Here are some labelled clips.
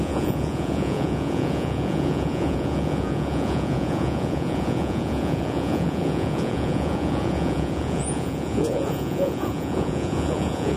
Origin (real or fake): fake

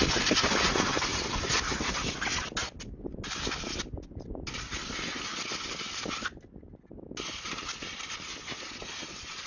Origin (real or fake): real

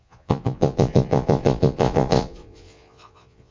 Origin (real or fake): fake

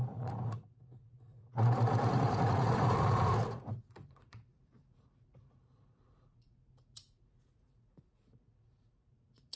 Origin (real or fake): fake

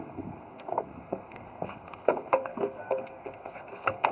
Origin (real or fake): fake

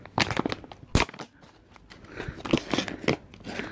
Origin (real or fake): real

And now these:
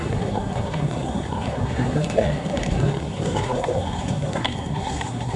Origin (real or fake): fake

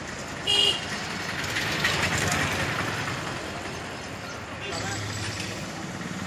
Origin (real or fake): real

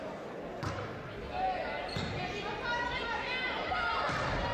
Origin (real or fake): real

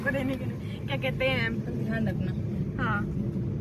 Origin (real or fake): real